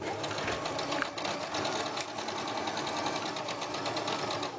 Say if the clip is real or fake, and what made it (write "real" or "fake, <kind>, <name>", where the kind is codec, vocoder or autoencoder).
real